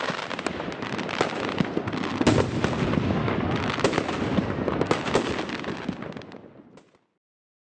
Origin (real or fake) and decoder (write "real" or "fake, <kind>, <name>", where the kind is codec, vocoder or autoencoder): real